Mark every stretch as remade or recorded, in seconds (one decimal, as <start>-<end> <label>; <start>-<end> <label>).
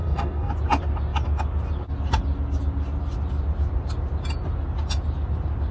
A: 0.0-0.5 remade; 0.5-5.7 recorded